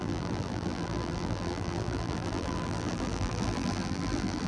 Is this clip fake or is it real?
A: fake